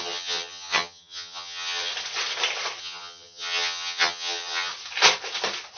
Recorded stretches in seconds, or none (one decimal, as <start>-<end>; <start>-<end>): 1.9-2.8; 4.7-5.8